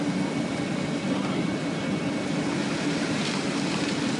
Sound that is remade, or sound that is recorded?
recorded